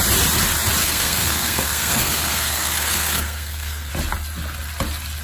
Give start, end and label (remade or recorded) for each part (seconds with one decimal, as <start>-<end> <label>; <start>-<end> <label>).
0.0-0.8 recorded; 0.8-3.9 remade; 3.9-5.2 recorded